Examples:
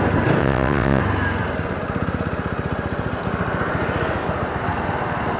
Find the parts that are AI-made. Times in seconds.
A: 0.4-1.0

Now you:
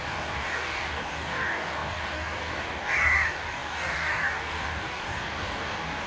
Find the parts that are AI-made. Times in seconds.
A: 0.0-6.1

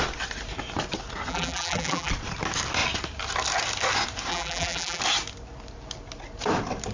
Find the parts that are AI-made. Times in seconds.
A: 1.3-2.1; 4.3-5.0

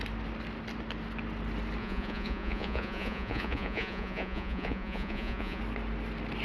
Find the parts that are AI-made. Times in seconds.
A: 1.8-5.6